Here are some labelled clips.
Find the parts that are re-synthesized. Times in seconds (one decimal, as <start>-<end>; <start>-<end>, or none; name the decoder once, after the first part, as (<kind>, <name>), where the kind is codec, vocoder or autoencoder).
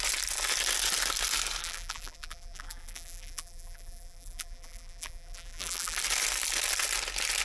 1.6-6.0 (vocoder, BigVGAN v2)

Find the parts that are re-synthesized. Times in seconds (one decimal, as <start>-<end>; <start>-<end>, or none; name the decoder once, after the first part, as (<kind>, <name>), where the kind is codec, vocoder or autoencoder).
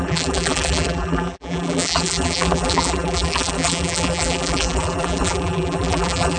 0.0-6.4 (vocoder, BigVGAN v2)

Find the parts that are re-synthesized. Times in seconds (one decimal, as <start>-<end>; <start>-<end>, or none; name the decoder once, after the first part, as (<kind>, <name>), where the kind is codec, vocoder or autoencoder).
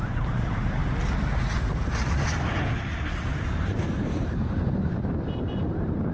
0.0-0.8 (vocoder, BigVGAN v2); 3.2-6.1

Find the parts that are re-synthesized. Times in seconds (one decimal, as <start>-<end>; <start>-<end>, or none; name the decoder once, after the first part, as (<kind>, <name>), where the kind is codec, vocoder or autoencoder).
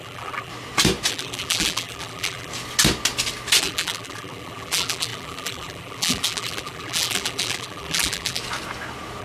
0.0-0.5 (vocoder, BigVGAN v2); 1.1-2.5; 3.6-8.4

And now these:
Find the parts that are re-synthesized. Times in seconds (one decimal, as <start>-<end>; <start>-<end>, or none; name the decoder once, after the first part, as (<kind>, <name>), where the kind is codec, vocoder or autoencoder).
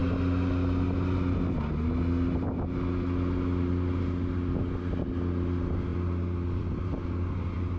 5.9-7.8 (vocoder, BigVGAN v2)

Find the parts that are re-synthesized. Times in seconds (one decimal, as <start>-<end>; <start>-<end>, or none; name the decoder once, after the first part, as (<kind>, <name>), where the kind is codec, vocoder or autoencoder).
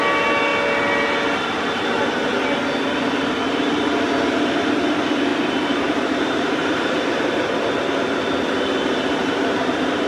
5.3-7.5 (vocoder, BigVGAN v2); 9.2-9.7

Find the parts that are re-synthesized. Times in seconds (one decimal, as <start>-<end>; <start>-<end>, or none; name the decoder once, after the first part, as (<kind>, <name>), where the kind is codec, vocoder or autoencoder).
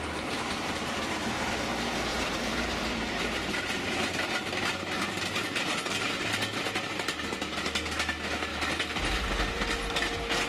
2.1-4.1 (vocoder, BigVGAN v2); 8.5-9.6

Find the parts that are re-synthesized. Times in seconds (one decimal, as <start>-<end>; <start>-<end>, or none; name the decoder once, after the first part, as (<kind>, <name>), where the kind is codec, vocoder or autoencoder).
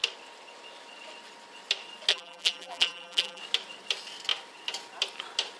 2.1-3.4 (vocoder, BigVGAN v2)